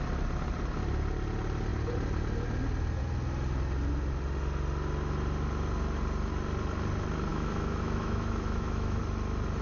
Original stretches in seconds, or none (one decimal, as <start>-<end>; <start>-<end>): 0.0-7.3; 9.0-9.6